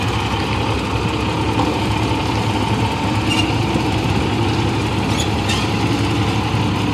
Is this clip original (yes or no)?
yes